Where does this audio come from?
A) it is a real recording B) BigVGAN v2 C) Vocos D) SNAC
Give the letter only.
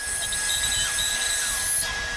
A